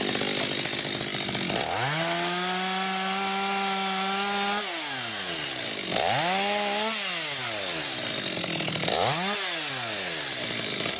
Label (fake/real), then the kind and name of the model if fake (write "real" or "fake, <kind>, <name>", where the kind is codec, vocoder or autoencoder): real